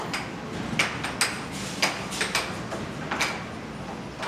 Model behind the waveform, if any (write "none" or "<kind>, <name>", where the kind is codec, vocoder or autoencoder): none